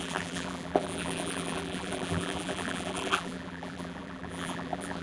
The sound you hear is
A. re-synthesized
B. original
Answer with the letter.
A